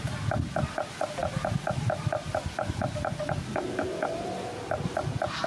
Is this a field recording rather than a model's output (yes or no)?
yes